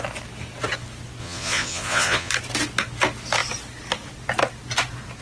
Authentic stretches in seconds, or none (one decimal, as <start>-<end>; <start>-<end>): 0.0-1.2; 2.3-5.2